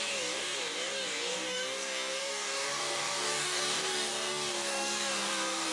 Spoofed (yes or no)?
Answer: yes